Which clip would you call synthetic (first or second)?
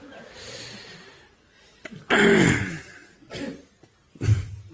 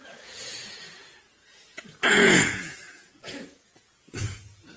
second